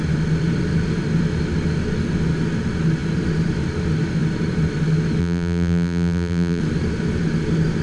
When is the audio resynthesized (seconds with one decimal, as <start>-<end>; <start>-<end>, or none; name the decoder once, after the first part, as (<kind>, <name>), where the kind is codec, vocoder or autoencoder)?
5.2-6.6 (vocoder, BigVGAN v2)